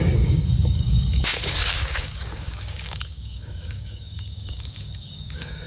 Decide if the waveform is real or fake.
fake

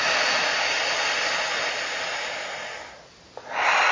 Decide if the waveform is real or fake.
real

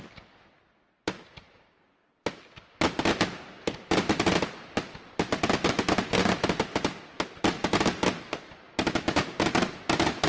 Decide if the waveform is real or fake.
real